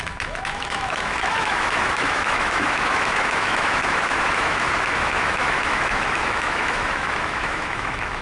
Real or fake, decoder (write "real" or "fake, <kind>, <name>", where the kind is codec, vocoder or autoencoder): fake, autoencoder, DAC-VAE